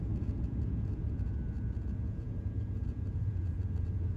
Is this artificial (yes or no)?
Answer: yes